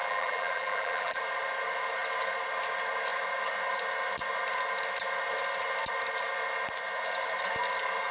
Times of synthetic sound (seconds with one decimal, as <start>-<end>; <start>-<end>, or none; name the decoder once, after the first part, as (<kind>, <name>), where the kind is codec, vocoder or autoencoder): 0.0-1.2 (vocoder, BigVGAN v2)